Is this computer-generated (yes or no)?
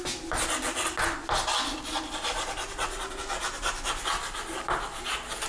no